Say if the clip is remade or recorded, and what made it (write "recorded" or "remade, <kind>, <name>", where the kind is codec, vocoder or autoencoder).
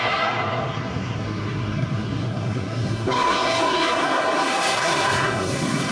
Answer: remade, codec, SNAC